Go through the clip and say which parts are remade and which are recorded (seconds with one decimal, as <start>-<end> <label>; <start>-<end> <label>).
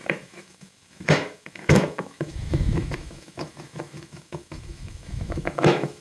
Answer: 0.0-6.0 remade